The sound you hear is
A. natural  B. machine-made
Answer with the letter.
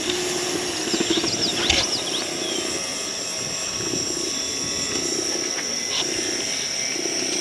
A